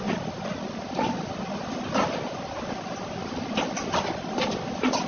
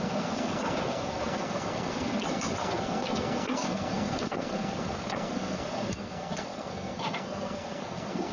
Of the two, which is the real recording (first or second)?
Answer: first